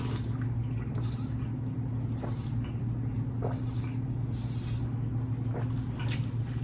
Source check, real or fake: real